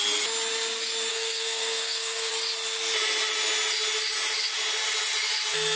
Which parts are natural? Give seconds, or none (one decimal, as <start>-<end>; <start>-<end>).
0.0-1.1; 2.3-5.8